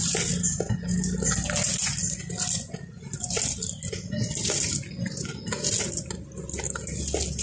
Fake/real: real